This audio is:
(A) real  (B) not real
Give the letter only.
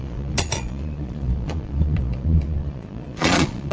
B